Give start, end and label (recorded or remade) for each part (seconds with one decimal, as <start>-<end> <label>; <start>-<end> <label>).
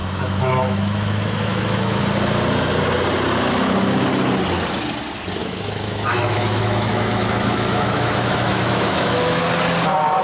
0.0-2.0 remade; 2.0-5.4 recorded; 5.4-9.4 remade; 9.4-10.2 recorded